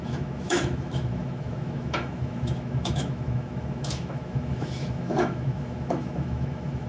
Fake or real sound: fake